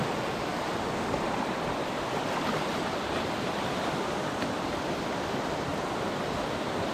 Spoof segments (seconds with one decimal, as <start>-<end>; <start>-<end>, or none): 0.0-5.7; 6.5-6.9

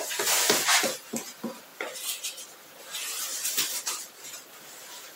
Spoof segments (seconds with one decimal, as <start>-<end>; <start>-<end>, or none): none

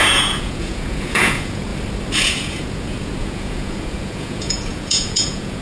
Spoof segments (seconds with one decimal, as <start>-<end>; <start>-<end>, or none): 0.0-1.7; 2.2-5.6

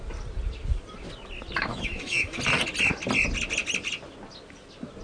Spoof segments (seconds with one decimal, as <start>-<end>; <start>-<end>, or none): 1.7-2.4

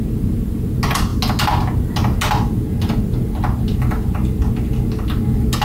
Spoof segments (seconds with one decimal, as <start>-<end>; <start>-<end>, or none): none

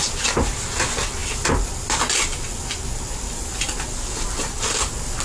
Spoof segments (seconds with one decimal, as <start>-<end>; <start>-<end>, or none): none

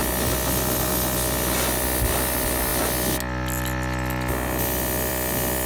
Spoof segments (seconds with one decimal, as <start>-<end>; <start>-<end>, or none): none